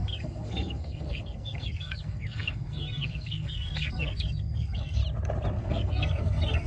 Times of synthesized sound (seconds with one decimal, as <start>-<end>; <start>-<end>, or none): 0.0-5.0; 5.6-6.7